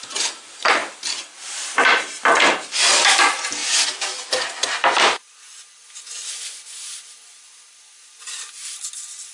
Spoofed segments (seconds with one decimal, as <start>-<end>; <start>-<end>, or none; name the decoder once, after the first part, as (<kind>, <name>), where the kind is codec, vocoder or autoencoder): none